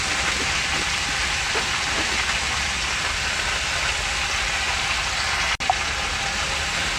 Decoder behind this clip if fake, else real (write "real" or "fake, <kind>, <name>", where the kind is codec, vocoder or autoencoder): real